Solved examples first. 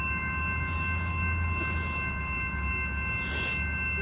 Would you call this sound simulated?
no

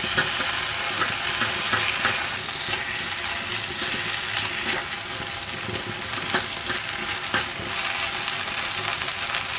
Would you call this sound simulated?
no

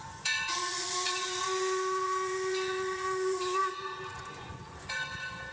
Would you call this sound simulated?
yes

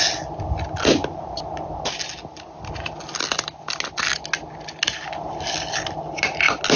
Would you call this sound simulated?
no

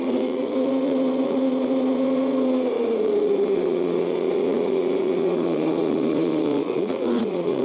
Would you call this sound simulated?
yes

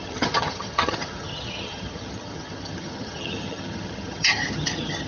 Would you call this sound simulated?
yes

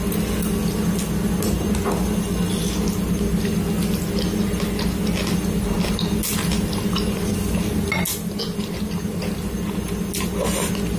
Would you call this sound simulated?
no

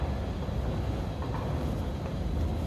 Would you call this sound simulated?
no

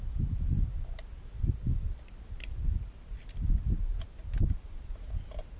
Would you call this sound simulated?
no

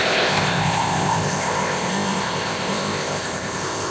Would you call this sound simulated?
yes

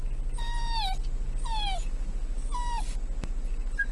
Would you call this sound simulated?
no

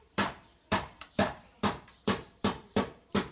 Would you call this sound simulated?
yes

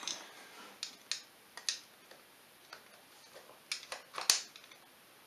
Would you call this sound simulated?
no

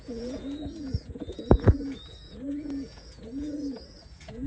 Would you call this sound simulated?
yes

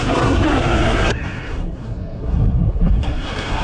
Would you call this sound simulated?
yes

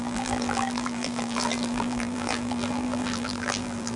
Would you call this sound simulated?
yes